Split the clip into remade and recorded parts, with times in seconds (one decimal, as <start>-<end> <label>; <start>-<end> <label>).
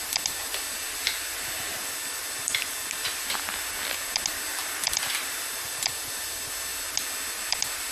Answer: 0.0-1.7 recorded; 1.7-3.2 remade; 3.2-4.5 recorded; 4.5-5.8 remade; 5.8-7.9 recorded